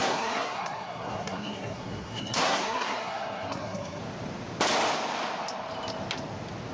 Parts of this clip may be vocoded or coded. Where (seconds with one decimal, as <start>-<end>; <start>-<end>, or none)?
0.0-4.0